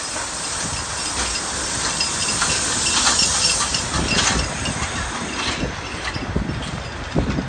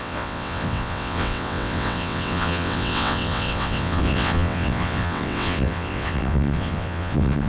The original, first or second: first